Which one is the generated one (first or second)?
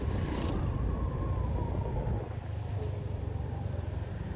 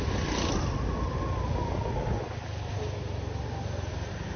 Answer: first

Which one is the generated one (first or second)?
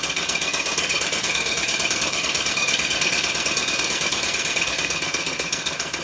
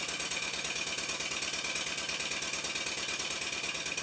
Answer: first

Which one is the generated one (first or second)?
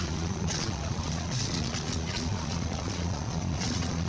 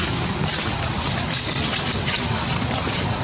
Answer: first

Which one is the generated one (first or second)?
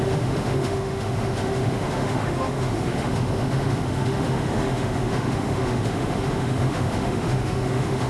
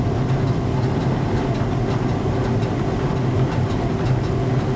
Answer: first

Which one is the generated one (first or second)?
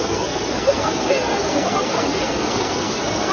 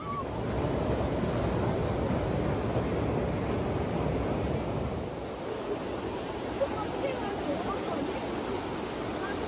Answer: first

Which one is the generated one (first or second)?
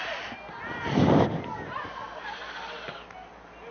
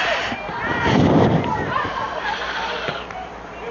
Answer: second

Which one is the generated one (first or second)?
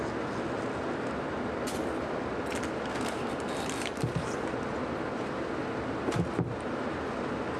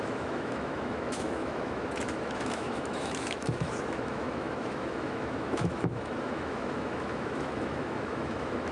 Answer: second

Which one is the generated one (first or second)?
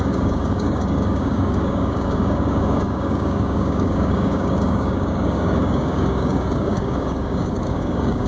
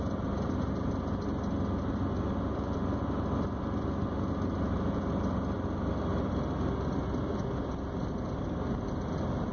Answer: first